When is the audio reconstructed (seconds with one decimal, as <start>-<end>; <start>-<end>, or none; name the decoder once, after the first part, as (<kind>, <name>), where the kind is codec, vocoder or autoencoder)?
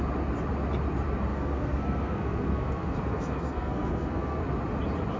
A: 1.3-4.4 (codec, SNAC)